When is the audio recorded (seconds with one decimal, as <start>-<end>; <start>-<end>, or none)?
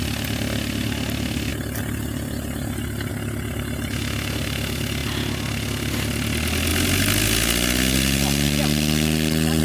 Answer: 0.0-9.6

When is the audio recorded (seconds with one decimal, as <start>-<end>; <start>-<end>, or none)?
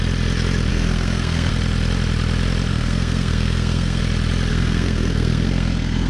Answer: 0.0-0.7; 1.5-2.7; 4.0-4.5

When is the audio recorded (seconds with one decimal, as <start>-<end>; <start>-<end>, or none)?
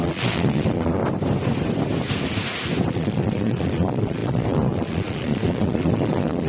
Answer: 1.0-2.9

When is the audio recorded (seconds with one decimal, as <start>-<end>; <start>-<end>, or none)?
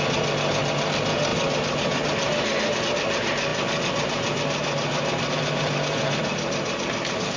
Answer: 0.0-7.4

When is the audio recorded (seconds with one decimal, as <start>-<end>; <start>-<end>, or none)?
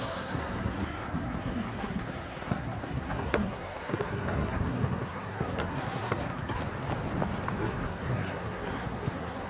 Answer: 6.6-7.6